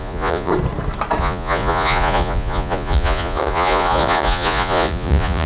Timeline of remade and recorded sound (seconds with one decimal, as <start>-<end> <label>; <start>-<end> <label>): 0.0-0.5 remade; 0.5-1.2 recorded; 1.2-5.5 remade